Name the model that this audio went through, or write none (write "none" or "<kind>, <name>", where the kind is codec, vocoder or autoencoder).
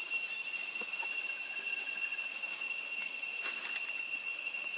none